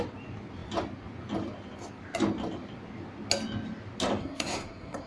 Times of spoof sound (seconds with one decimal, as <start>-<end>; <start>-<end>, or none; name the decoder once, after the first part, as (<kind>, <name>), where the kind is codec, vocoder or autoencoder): 4.2-5.1 (codec, SNAC)